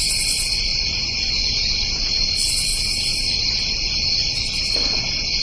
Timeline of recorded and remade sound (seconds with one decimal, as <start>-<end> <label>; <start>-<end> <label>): 0.0-0.7 recorded; 0.7-1.4 remade; 1.4-5.4 recorded